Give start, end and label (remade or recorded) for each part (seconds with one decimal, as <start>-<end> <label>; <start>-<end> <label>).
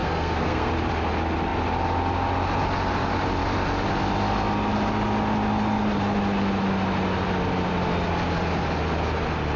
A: 0.0-0.7 remade; 0.7-9.6 recorded